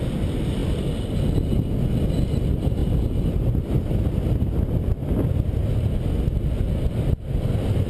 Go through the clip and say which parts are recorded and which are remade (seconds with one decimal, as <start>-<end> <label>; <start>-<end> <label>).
0.0-2.8 recorded; 2.8-3.7 remade; 3.7-7.9 recorded